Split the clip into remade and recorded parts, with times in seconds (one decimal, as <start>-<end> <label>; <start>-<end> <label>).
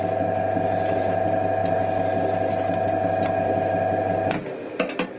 0.0-5.2 recorded